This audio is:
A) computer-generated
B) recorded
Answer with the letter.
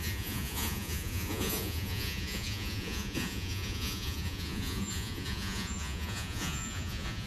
A